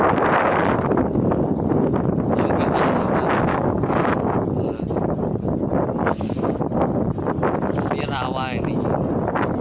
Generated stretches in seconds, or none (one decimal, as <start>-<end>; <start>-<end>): 3.5-4.1; 6.0-6.6